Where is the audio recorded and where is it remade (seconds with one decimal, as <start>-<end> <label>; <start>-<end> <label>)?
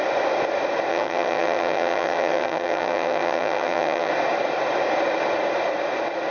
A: 0.0-0.9 recorded; 0.9-4.1 remade; 4.1-6.3 recorded